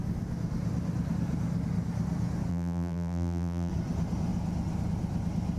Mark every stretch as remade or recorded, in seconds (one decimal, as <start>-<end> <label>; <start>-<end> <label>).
0.0-2.5 recorded; 2.5-3.7 remade; 3.7-5.6 recorded